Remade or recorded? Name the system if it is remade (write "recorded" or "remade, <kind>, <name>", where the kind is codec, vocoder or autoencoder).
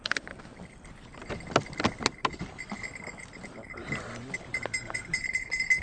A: recorded